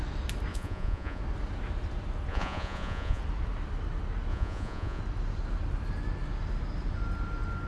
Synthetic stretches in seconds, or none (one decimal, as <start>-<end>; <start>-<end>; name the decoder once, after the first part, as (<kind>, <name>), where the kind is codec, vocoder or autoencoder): 0.5-1.2 (vocoder, Vocos); 2.3-3.2; 4.3-5.0

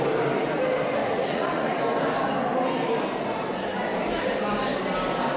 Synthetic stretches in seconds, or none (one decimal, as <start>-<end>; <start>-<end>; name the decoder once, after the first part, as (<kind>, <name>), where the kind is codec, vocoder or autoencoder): 1.0-1.8 (vocoder, Vocos)